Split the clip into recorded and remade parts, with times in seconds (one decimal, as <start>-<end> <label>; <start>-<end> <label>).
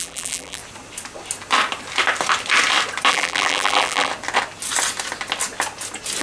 0.0-0.6 remade; 0.6-3.1 recorded; 3.1-4.1 remade; 4.1-6.2 recorded